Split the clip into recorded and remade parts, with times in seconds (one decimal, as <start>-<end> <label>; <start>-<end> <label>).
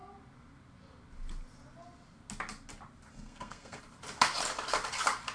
0.0-3.1 recorded; 3.1-3.8 remade; 3.8-5.3 recorded